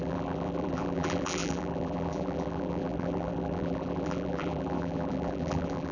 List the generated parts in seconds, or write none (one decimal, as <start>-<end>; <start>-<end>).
0.0-5.9

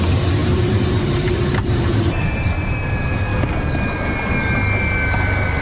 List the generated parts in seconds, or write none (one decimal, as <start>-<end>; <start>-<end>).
0.0-3.3

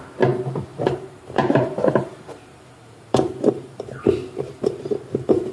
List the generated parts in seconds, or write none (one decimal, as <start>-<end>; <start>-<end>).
0.7-4.0

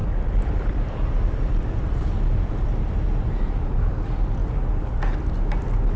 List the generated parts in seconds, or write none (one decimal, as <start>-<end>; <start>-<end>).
0.0-4.4; 4.9-6.0

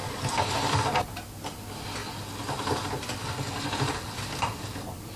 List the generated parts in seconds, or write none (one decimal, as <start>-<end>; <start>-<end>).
0.7-2.0; 3.9-5.2

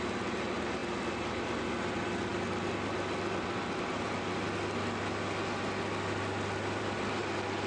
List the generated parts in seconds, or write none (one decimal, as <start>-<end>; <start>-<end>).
none

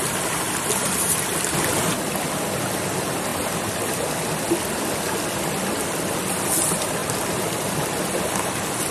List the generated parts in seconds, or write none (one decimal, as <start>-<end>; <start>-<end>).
7.0-8.9